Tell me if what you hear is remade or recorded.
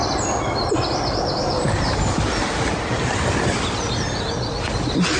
recorded